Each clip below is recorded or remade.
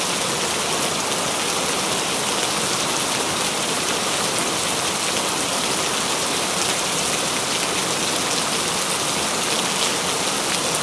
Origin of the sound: recorded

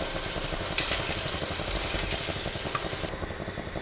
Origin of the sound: recorded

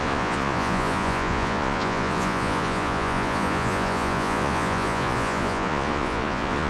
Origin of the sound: remade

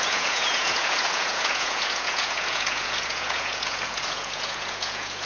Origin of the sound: remade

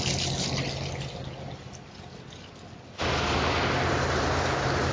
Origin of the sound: recorded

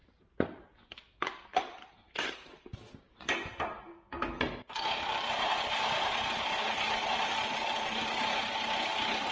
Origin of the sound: recorded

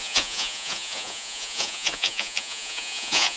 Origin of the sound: remade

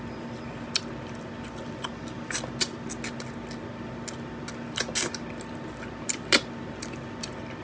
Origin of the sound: recorded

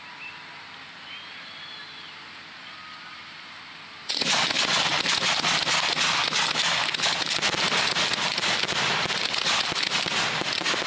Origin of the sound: recorded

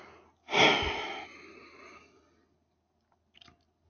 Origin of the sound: recorded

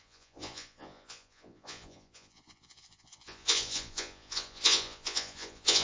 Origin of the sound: remade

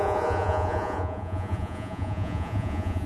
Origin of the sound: remade